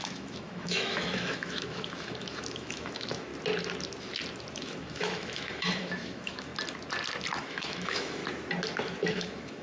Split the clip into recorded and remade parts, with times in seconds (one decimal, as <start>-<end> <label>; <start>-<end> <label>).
0.0-3.3 remade; 3.3-4.5 recorded; 4.5-6.5 remade; 6.5-7.4 recorded; 7.4-8.2 remade; 8.2-9.1 recorded; 9.1-9.6 remade